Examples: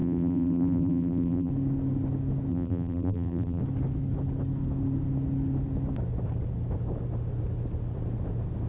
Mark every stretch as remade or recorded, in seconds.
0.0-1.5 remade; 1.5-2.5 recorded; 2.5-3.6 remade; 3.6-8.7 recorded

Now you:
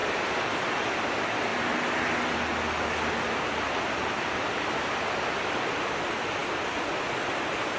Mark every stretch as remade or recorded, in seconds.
0.0-7.8 recorded

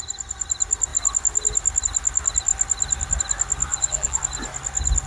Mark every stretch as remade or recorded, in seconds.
0.0-3.7 recorded; 3.7-4.2 remade; 4.2-5.1 recorded

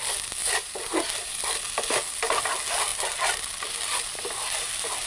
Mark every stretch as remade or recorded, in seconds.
0.0-0.4 recorded; 0.4-1.3 remade; 1.3-5.1 recorded

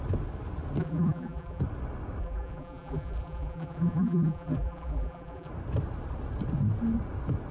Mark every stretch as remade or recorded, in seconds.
0.0-0.8 recorded; 0.8-1.6 remade; 1.6-2.2 recorded; 2.2-5.5 remade; 5.5-7.5 recorded

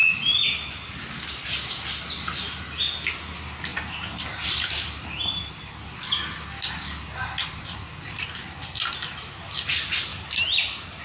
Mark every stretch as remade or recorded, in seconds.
0.0-3.7 recorded; 3.7-5.4 remade; 5.4-10.1 recorded; 10.1-11.0 remade